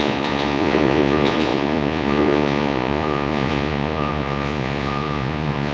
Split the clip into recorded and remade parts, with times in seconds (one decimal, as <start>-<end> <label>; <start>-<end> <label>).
0.0-5.7 remade